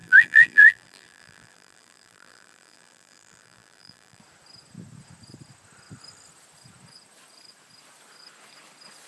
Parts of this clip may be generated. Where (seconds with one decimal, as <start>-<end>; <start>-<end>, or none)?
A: 0.0-4.2